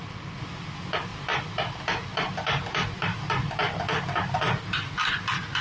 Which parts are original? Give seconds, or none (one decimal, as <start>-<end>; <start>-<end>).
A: 0.0-1.1; 4.2-5.6

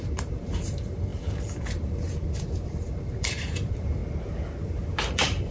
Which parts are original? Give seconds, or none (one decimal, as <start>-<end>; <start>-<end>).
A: 4.0-5.1